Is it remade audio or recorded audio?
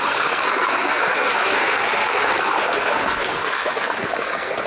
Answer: remade